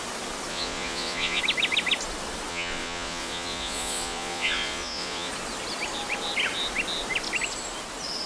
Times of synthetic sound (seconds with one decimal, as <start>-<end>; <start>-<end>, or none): 0.5-1.4; 2.5-5.3